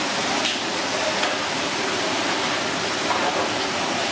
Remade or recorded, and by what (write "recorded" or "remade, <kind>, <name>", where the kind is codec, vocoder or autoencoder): recorded